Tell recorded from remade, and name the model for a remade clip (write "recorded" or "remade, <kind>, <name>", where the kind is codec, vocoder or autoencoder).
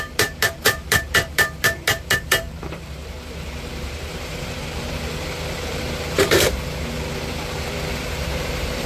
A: remade, vocoder, BigVGAN v2